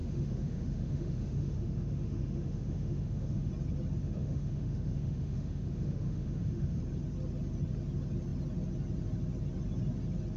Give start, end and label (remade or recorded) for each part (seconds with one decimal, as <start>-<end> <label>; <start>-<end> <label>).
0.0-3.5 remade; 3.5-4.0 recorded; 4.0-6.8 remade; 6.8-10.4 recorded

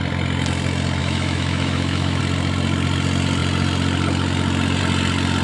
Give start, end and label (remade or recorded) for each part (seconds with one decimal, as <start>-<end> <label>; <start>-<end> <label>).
0.0-1.0 recorded; 1.0-2.2 remade; 2.2-5.4 recorded

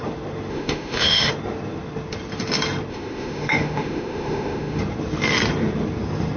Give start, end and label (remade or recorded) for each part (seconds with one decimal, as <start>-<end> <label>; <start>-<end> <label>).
0.0-0.5 recorded; 0.5-1.3 remade; 1.3-2.9 recorded; 2.9-4.8 remade; 4.8-6.4 recorded

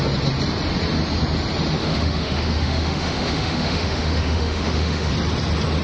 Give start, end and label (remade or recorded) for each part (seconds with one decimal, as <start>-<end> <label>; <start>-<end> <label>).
0.0-1.8 recorded; 1.8-5.1 remade; 5.1-5.8 recorded